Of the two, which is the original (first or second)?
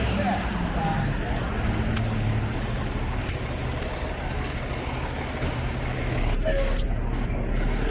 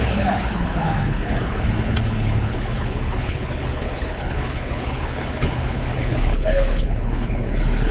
first